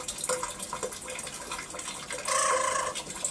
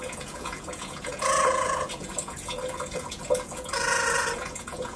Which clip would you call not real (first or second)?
second